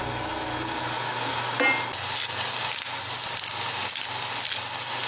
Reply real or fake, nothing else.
real